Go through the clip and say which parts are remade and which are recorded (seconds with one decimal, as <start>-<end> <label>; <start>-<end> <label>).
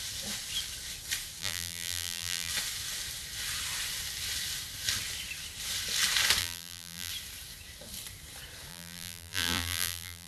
0.0-1.4 recorded; 1.4-2.5 remade; 2.5-6.4 recorded; 6.4-7.1 remade; 7.1-8.7 recorded; 8.7-10.3 remade